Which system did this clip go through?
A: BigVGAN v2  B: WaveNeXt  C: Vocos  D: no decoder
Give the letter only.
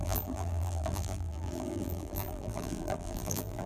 A